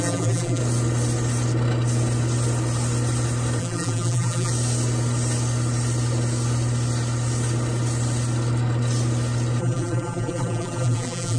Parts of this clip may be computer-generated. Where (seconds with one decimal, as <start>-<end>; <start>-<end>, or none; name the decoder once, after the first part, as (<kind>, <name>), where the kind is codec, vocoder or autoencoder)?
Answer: 0.0-0.6 (vocoder, BigVGAN v2); 3.6-4.5; 9.6-11.4